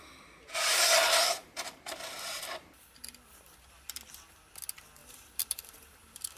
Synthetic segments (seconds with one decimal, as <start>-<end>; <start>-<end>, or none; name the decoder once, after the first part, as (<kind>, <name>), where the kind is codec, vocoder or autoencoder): 1.4-4.1 (vocoder, BigVGAN v2); 5.0-6.4

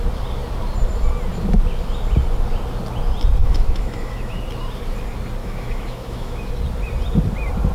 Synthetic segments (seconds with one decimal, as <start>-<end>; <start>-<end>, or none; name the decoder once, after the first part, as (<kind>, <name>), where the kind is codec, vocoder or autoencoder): 3.4-4.4 (autoencoder, DAC-VAE); 5.4-6.5

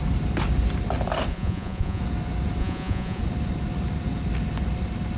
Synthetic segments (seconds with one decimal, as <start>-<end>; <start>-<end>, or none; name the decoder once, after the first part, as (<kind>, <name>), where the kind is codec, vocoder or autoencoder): 1.3-2.0 (vocoder, Vocos); 2.6-3.2

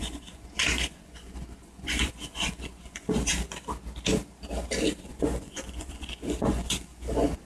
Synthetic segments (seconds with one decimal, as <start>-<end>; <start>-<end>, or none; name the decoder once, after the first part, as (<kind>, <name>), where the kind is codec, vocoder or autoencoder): 0.0-3.3 (vocoder, Vocos); 5.0-7.5

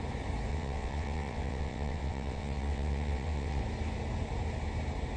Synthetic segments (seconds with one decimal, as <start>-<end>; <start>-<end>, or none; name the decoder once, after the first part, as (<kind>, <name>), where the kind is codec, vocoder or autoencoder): 0.5-3.6 (vocoder, WaveNeXt)

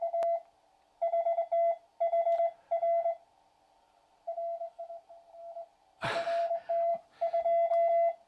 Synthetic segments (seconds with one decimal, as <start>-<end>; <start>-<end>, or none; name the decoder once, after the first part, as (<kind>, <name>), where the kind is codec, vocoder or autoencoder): none

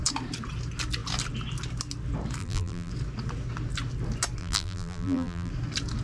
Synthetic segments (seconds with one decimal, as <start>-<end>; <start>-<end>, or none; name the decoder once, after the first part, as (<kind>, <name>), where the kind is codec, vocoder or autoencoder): 2.4-2.9 (vocoder, BigVGAN v2); 4.4-5.5